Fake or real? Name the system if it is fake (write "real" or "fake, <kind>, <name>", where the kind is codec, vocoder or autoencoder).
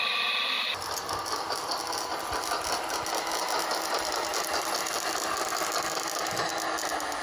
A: real